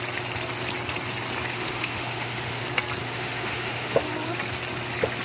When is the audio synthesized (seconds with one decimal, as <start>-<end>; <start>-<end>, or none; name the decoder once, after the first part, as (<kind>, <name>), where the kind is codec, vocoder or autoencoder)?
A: 1.5-2.6 (autoencoder, DAC-VAE); 3.0-4.0